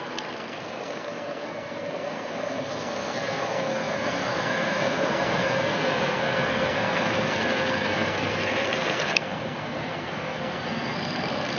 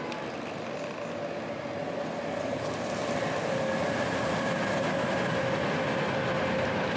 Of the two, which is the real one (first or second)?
second